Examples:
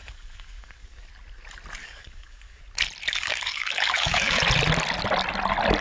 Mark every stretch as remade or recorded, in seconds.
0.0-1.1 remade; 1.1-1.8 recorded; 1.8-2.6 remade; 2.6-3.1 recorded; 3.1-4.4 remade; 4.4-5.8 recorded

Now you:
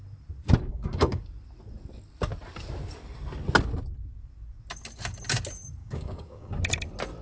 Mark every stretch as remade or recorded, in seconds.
0.0-0.7 recorded; 0.7-1.2 remade; 1.2-5.8 recorded; 5.8-6.5 remade; 6.5-7.2 recorded

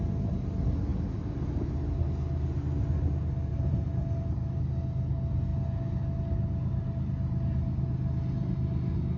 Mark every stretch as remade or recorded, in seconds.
0.0-9.2 recorded

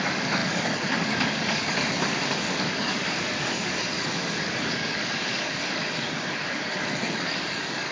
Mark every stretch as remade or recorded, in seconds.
0.0-7.9 remade

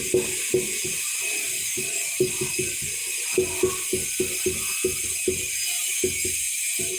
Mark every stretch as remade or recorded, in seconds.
0.0-1.6 recorded; 1.6-2.3 remade; 2.3-7.0 recorded

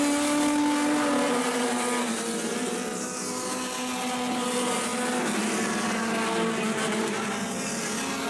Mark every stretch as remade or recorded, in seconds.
0.0-8.3 recorded

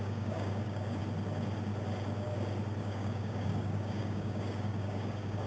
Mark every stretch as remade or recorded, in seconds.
0.0-1.0 remade; 1.0-2.8 recorded; 2.8-5.5 remade